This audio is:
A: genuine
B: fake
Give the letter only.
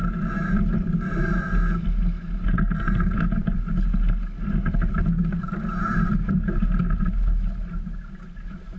A